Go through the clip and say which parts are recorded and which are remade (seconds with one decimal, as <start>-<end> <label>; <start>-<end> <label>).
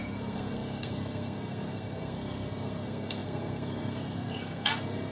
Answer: 0.0-5.1 remade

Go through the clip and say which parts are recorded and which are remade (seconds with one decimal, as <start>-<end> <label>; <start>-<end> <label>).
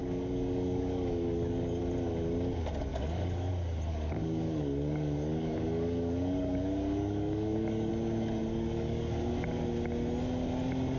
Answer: 0.0-1.8 remade; 1.8-2.9 recorded; 2.9-3.5 remade; 3.5-3.9 recorded; 3.9-7.9 remade; 7.9-8.4 recorded; 8.4-9.2 remade; 9.2-11.0 recorded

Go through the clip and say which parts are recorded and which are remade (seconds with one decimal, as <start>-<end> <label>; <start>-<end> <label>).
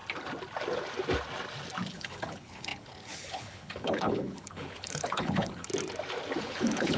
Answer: 0.0-1.9 recorded; 1.9-5.7 remade; 5.7-6.4 recorded; 6.4-7.0 remade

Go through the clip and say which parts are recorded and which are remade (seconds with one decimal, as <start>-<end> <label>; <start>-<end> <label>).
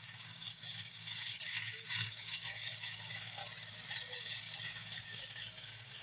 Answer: 0.0-3.4 remade; 3.4-4.2 recorded; 4.2-6.0 remade